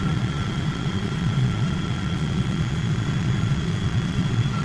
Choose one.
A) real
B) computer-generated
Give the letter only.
B